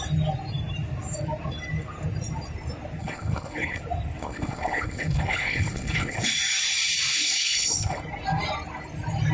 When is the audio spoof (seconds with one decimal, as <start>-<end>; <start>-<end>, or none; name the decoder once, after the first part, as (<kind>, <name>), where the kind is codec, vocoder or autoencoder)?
3.0-3.8 (codec, HILCodec); 4.2-6.3; 7.1-8.0